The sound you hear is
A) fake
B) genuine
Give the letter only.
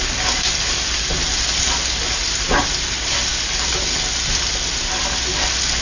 B